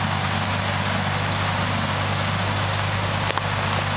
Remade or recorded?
recorded